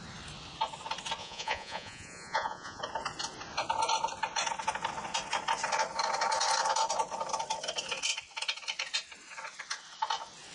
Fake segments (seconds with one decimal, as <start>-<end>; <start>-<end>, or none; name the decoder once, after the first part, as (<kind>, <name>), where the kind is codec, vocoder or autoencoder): 1.2-2.8 (vocoder, Vocos)